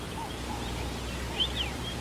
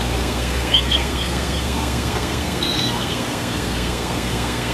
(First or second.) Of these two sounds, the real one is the first